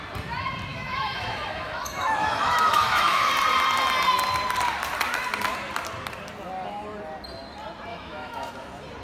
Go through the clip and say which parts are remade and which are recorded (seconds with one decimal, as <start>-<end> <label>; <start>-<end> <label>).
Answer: 0.0-0.7 recorded; 0.7-3.3 remade; 3.3-7.9 recorded; 7.9-8.5 remade; 8.5-9.0 recorded